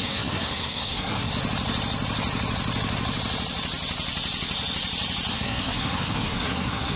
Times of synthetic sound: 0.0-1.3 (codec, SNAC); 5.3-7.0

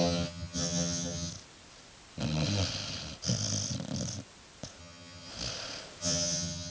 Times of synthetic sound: 0.0-1.3 (vocoder, HiFi-GAN); 4.8-5.3; 6.0-6.7

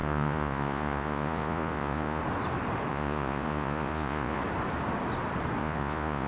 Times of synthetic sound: 0.0-2.2 (vocoder, Vocos); 2.9-4.4; 5.6-6.3

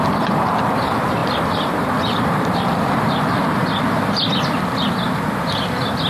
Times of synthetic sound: none

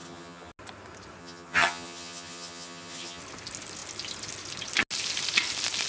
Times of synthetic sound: 0.0-0.5 (vocoder, HiFi-GAN); 1.2-3.2